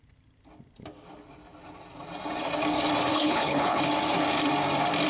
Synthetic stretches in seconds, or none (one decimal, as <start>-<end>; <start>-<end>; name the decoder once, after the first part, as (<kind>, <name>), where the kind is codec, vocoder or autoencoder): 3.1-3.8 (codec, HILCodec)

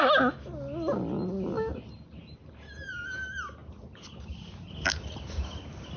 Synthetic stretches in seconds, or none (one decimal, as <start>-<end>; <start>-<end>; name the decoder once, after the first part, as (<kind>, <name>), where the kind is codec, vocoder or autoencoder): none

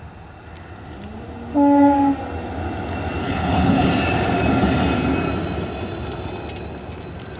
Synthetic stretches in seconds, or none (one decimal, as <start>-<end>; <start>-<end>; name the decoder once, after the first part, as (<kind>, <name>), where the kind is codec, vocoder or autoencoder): 3.2-3.8 (codec, HILCodec)